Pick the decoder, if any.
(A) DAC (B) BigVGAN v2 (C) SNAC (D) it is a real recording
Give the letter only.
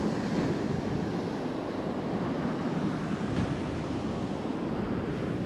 D